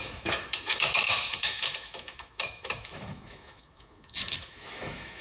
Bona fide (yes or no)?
no